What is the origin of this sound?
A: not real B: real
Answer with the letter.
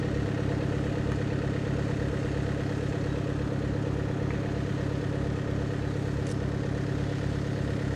B